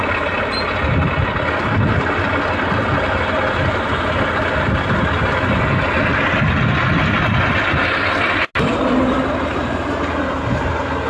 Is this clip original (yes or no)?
yes